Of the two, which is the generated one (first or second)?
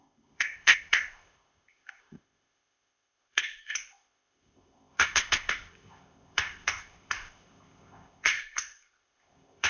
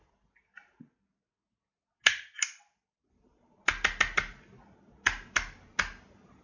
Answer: first